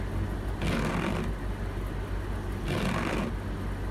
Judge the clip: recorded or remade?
recorded